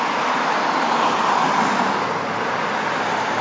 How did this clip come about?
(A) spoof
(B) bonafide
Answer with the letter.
B